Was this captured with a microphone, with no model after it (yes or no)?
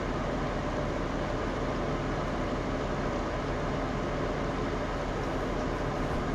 yes